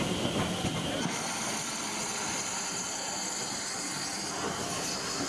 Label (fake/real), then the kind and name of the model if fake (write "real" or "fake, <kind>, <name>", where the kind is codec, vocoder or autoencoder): real